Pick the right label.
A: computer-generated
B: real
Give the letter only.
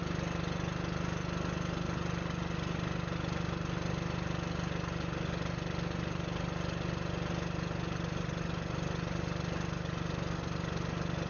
B